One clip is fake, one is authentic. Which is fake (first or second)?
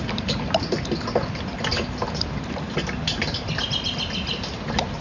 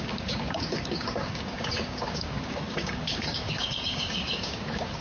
second